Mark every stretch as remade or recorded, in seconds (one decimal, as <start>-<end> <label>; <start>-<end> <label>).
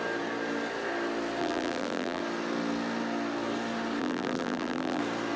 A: 0.0-1.4 recorded; 1.4-2.2 remade; 2.2-4.0 recorded; 4.0-5.0 remade; 5.0-5.4 recorded